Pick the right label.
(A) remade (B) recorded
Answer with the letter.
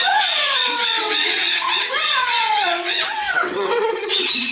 A